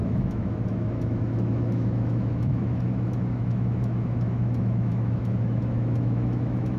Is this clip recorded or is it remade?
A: remade